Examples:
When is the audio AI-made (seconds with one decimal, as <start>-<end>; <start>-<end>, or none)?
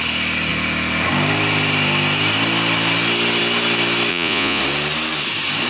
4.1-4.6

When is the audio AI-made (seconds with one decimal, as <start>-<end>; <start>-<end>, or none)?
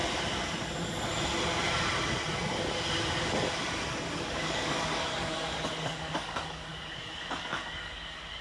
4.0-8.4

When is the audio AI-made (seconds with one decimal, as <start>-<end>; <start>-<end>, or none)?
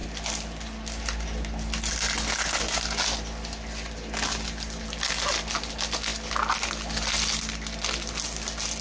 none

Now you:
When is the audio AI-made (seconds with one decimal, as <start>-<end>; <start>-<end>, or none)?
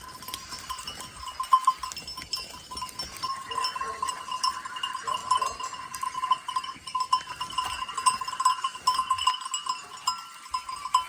none